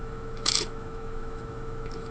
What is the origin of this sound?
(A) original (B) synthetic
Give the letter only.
B